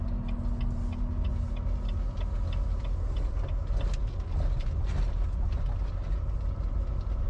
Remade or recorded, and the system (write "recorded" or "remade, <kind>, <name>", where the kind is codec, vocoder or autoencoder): recorded